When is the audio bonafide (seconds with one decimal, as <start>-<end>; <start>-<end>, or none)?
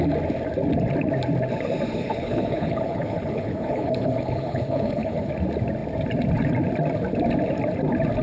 0.0-1.9; 5.3-8.2